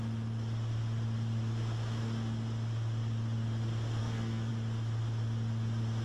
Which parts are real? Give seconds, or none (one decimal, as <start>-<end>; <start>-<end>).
0.0-4.0; 4.5-6.0